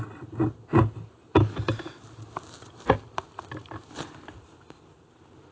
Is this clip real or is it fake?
real